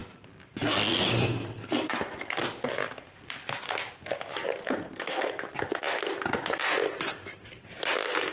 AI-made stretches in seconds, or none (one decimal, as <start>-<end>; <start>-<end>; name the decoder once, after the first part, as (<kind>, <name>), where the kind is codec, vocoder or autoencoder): 4.6-5.3 (codec, SNAC)